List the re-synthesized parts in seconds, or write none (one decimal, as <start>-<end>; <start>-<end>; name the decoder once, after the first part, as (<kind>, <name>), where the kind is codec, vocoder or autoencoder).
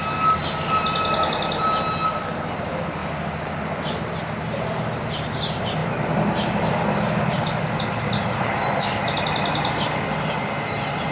none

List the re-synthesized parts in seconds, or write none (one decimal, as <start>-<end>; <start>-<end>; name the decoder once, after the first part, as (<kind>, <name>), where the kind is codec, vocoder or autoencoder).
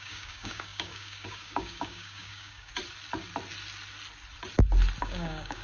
0.0-2.7 (codec, DAC); 5.0-5.6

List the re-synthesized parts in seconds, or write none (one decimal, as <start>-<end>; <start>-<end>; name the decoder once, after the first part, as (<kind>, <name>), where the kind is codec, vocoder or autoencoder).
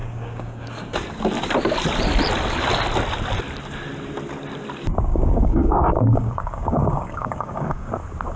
0.0-0.7 (codec, DAC); 5.1-7.9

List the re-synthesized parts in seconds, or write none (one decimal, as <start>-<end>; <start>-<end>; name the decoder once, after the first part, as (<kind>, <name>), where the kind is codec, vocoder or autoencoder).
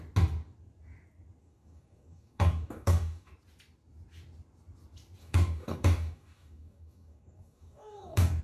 1.4-3.3 (codec, DAC); 5.2-8.4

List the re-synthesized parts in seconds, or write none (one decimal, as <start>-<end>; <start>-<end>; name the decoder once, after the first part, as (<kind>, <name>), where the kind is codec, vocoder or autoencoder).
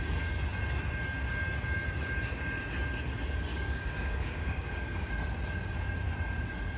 3.5-5.1 (codec, DAC)